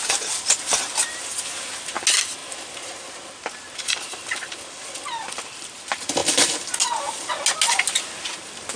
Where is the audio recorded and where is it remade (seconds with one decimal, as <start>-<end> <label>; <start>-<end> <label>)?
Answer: 0.0-8.8 recorded